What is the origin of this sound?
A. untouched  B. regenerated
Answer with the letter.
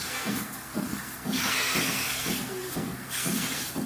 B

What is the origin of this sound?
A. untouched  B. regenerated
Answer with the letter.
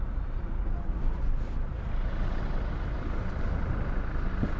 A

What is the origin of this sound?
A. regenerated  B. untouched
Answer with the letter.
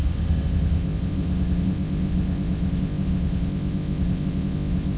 A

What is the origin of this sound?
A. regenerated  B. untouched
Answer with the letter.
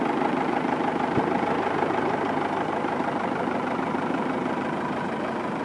A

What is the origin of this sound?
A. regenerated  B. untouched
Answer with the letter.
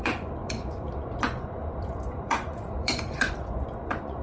A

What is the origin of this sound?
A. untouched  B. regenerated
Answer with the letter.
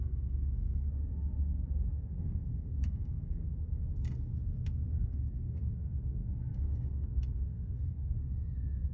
B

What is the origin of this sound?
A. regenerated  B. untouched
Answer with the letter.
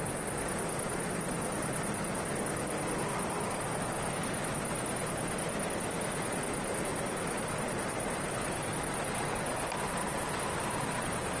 B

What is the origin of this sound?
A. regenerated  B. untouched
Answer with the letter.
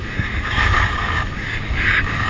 A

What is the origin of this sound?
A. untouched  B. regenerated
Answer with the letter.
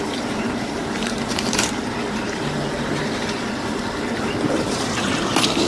B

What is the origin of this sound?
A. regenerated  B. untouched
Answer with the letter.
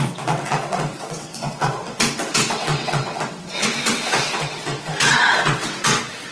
A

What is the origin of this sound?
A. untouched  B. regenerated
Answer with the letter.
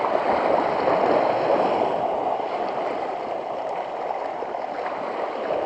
B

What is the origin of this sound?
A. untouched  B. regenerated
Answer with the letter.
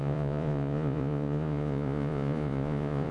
B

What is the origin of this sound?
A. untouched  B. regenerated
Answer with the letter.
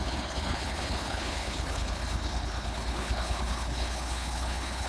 B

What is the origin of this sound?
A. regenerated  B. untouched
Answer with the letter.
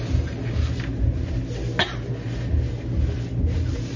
B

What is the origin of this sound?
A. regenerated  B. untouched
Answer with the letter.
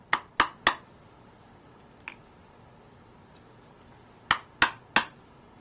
B